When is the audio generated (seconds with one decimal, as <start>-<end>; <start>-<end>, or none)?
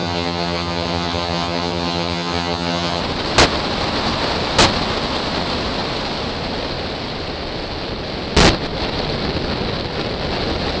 0.0-3.0